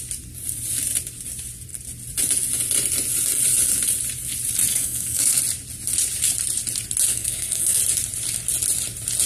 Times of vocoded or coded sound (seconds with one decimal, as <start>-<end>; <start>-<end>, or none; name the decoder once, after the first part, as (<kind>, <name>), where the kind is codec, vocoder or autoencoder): 4.7-5.4 (codec, SNAC); 7.1-7.8